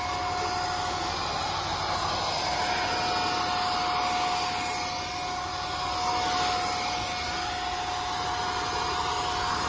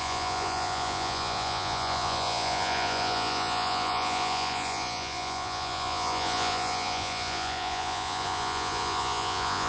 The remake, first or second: second